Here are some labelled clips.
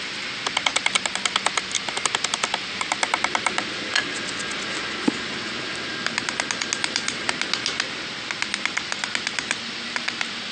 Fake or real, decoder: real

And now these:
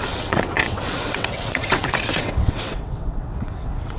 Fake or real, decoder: fake, vocoder, WaveNeXt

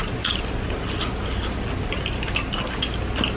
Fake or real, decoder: real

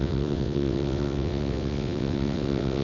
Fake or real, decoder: fake, vocoder, WaveNeXt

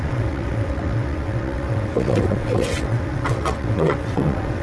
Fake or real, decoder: fake, vocoder, WaveNeXt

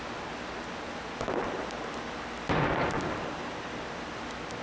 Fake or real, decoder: real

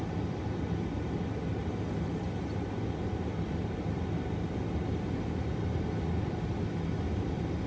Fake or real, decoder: real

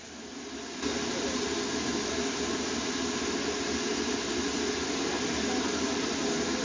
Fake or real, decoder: real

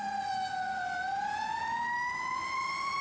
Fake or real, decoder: real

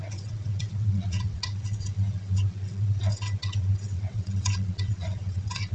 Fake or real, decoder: fake, vocoder, WaveNeXt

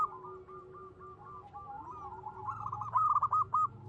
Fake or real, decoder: real